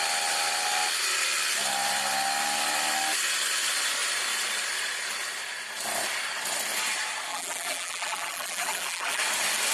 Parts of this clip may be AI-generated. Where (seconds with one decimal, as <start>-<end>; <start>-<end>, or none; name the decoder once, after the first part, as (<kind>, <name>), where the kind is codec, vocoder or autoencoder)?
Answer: 7.3-9.2 (vocoder, BigVGAN v2)